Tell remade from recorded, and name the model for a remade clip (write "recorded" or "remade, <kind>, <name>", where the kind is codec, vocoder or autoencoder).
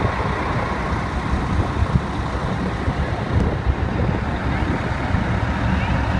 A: recorded